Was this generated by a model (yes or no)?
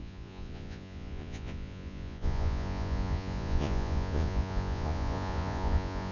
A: yes